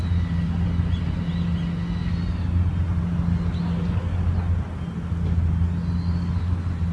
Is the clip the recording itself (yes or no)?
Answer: yes